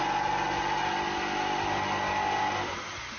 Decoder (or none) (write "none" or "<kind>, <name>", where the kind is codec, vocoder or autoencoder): none